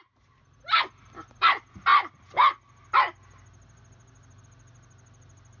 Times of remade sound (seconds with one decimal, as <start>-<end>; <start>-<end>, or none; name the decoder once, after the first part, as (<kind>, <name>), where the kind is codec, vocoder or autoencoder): none